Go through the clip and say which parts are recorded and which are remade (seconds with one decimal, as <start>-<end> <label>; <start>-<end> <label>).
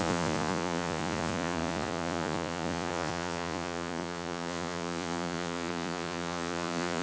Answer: 0.0-7.0 remade